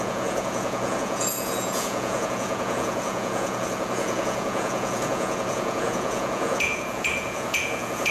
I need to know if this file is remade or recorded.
remade